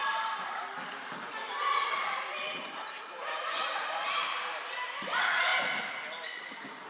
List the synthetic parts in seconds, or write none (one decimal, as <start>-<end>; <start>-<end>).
1.0-5.5